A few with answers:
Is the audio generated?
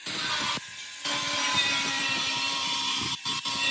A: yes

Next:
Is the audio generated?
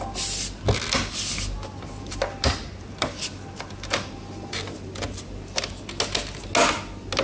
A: no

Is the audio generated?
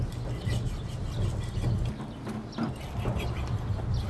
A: no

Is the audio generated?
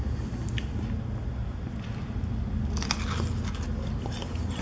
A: no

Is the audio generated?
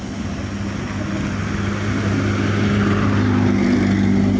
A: no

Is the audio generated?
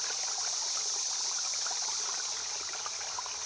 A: no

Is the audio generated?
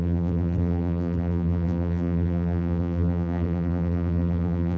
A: yes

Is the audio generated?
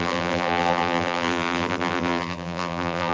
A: yes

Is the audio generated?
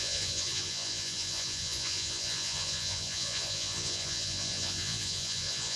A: yes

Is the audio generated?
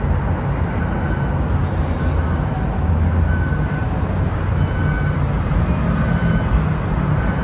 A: no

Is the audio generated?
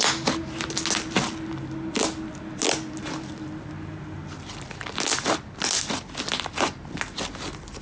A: no